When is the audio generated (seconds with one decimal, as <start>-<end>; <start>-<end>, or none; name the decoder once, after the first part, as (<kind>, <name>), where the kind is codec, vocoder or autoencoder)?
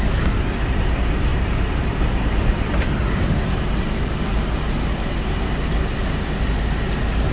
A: 1.3-5.6 (vocoder, BigVGAN v2)